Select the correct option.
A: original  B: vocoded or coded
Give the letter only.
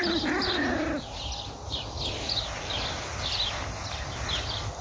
A